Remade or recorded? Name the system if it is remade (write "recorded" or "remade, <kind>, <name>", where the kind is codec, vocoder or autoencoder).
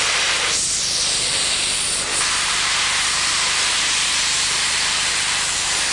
remade, vocoder, BigVGAN v2